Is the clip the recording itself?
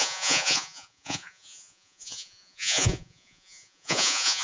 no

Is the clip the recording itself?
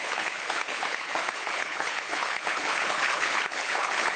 no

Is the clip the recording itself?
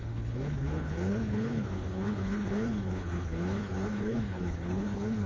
no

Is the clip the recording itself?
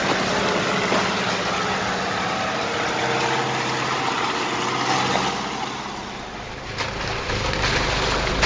yes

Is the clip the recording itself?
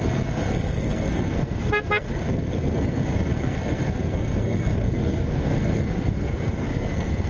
no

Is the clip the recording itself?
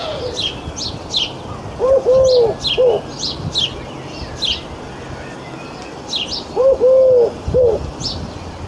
yes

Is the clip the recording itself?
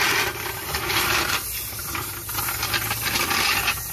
no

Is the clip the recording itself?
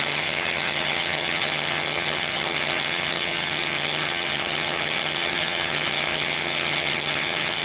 no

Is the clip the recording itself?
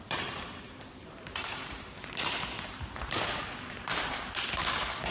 no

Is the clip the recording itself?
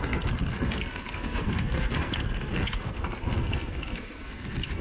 no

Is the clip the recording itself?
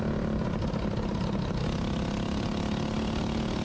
yes